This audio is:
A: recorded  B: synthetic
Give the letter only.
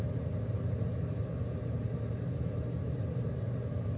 B